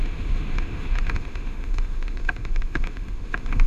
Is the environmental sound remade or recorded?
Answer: remade